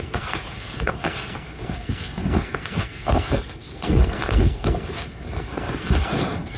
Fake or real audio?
fake